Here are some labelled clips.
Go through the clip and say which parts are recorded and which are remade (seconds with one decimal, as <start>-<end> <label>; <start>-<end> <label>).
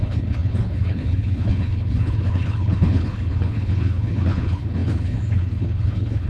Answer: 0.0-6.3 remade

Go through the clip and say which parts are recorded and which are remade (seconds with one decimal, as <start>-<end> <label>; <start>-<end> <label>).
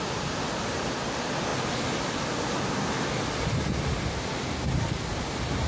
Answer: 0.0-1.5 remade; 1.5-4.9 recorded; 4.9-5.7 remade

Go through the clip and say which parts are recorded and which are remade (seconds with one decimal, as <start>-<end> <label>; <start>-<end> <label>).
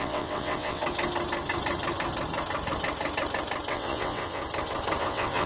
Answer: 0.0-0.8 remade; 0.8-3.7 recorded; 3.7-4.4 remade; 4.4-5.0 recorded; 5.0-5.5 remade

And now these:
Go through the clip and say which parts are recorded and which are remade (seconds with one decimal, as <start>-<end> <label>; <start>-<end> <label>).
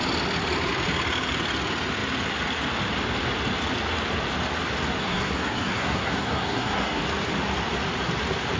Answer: 0.0-5.0 recorded; 5.0-7.0 remade; 7.0-8.6 recorded